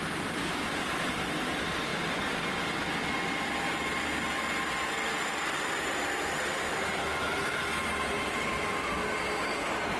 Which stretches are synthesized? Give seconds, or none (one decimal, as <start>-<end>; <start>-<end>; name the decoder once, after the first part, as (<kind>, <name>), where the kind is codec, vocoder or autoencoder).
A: 7.0-7.6 (autoencoder, DAC-VAE)